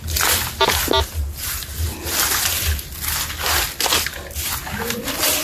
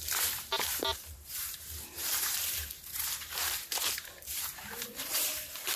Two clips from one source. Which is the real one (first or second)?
first